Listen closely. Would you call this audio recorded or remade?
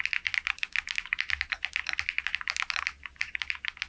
recorded